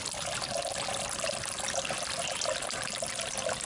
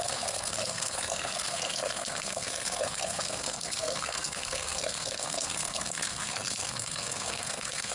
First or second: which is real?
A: first